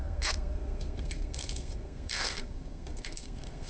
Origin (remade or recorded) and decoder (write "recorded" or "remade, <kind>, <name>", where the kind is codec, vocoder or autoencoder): remade, codec, SNAC